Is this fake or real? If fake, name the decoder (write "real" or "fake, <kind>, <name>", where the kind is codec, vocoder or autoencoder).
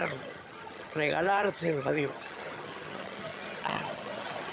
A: fake, vocoder, HiFi-GAN